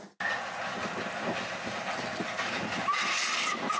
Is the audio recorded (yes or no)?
yes